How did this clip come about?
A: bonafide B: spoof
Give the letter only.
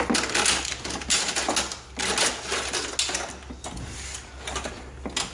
A